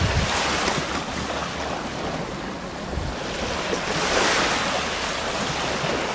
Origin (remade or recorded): recorded